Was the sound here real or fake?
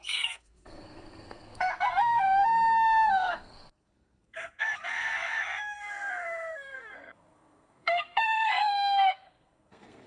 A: fake